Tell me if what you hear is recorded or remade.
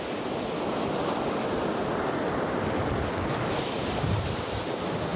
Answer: recorded